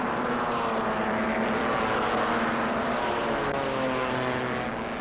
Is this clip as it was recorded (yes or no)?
yes